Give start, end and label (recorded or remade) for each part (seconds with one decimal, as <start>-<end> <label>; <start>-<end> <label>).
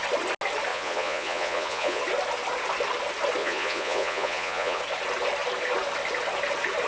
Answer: 0.0-0.7 recorded; 0.7-2.0 remade; 2.0-3.4 recorded; 3.4-4.8 remade; 4.8-6.9 recorded